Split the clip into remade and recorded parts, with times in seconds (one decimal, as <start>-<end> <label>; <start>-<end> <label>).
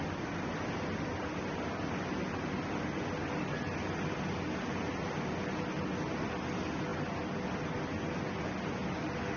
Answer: 0.0-9.4 recorded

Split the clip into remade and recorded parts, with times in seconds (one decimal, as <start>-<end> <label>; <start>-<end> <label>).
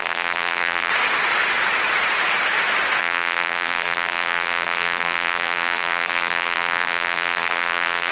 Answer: 0.0-0.9 remade; 0.9-3.0 recorded; 3.0-8.1 remade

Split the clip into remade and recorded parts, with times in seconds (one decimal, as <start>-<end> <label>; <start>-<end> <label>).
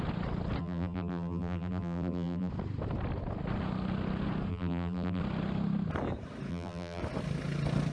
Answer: 0.0-0.6 recorded; 0.6-2.5 remade; 2.5-4.5 recorded; 4.5-5.2 remade; 5.2-6.5 recorded; 6.5-7.0 remade; 7.0-7.9 recorded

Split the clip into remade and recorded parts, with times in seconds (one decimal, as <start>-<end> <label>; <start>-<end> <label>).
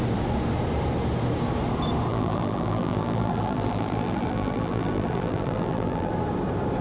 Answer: 0.0-2.1 recorded; 2.1-6.1 remade; 6.1-6.8 recorded